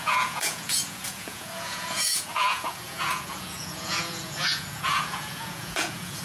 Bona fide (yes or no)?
no